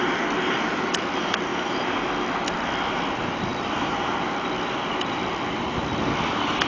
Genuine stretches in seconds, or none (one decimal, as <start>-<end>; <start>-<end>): 0.0-3.5; 6.0-6.7